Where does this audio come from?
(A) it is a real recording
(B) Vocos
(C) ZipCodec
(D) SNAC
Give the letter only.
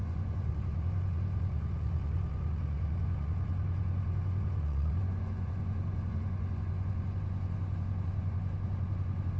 B